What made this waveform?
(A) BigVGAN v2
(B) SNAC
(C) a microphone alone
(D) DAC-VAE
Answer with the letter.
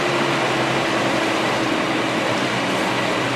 C